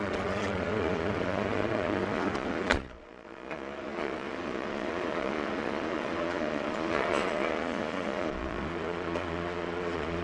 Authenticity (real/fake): fake